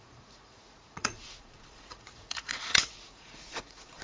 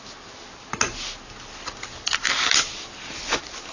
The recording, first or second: second